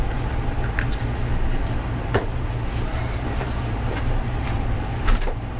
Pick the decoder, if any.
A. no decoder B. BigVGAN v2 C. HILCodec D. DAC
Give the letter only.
B